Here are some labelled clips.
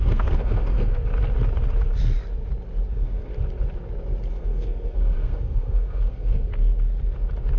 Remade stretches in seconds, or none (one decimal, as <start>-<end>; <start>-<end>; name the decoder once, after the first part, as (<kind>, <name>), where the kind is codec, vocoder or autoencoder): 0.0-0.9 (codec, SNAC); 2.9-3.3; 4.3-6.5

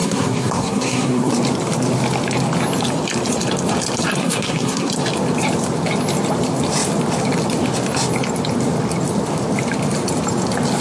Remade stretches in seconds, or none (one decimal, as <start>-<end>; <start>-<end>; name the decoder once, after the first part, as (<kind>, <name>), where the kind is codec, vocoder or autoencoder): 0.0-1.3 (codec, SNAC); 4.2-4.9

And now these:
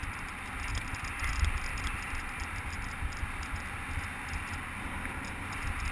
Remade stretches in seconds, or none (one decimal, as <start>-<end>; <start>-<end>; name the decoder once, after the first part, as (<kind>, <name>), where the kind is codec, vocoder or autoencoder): none

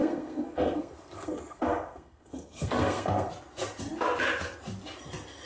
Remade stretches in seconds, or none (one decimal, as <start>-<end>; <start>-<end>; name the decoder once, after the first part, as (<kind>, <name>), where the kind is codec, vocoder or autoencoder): 0.0-3.3 (codec, SNAC)